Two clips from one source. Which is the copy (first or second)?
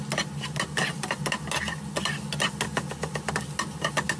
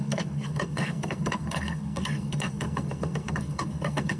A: second